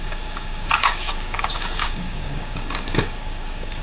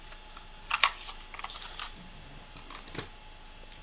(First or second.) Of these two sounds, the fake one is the first